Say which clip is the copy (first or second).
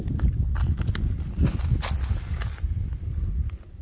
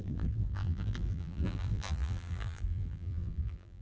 second